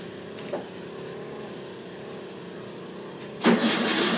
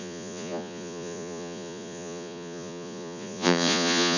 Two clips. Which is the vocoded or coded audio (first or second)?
second